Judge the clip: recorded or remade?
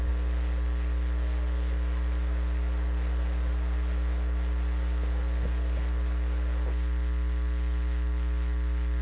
recorded